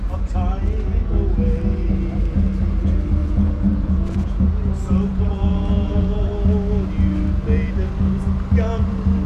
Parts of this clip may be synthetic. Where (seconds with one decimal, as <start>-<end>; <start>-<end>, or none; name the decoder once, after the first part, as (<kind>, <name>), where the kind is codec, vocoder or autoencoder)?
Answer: 3.2-4.5 (vocoder, Vocos); 5.1-6.2